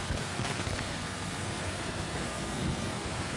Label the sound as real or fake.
fake